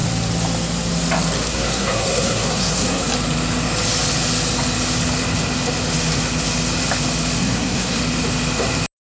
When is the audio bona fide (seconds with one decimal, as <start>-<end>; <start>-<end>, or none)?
0.0-1.5; 3.1-7.4; 8.0-9.0